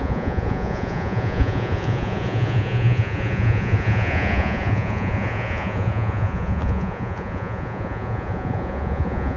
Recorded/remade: remade